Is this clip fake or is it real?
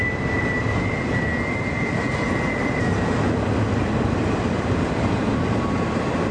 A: fake